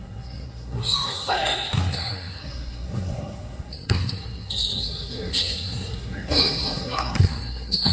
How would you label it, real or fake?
fake